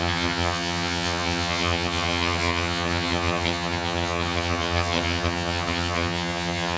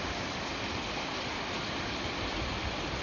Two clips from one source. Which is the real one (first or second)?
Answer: second